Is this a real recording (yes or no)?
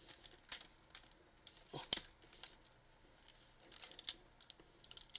yes